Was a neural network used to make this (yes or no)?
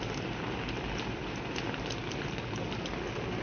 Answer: no